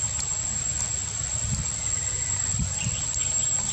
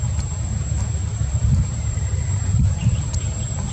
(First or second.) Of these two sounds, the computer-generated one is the second